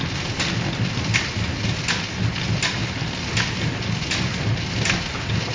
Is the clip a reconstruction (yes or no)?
no